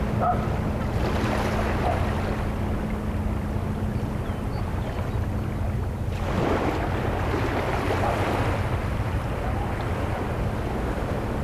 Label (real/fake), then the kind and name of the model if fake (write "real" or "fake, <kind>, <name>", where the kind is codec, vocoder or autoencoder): real